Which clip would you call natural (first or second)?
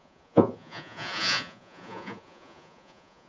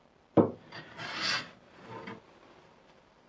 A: second